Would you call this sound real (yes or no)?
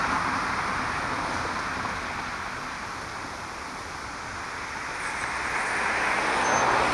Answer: yes